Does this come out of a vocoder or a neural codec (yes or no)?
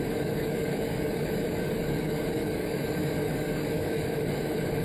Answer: yes